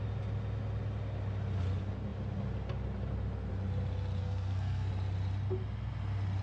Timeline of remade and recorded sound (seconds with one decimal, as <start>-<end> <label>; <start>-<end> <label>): 0.0-4.2 recorded; 4.2-4.9 remade; 4.9-6.4 recorded